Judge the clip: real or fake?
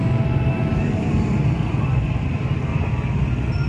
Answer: real